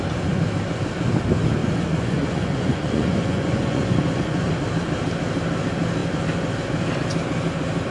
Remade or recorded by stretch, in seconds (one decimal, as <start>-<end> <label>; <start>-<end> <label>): 0.0-1.6 recorded; 1.6-4.5 remade; 4.5-7.9 recorded